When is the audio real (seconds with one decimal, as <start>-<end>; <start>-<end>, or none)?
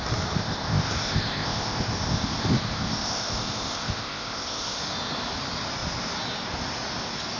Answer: 0.0-0.4; 4.8-7.4